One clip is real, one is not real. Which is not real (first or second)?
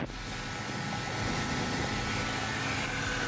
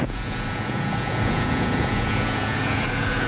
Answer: second